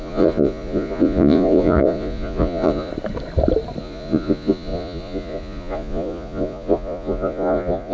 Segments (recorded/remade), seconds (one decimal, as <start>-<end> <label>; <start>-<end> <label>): 0.0-2.9 remade; 2.9-3.8 recorded; 3.8-7.9 remade